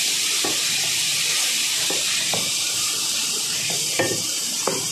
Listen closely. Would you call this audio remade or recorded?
remade